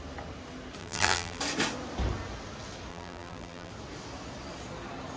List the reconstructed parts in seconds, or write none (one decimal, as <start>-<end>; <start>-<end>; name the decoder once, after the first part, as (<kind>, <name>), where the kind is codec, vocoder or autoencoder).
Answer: 0.8-1.4 (vocoder, BigVGAN v2); 2.9-3.7